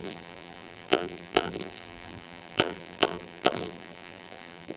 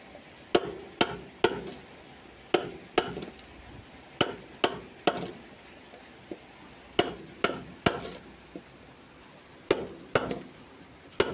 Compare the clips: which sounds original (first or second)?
second